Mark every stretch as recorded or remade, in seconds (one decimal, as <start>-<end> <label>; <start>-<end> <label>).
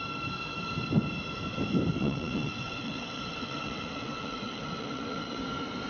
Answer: 0.0-1.9 recorded; 1.9-5.4 remade; 5.4-5.9 recorded